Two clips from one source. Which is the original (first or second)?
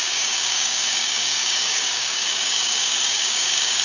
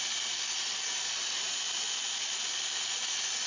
second